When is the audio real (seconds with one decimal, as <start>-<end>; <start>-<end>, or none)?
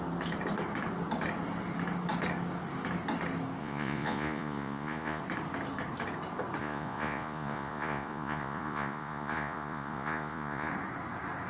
0.0-3.6; 5.2-6.6; 10.7-11.5